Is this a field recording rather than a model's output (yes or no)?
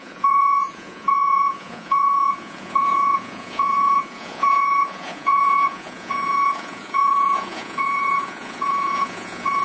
no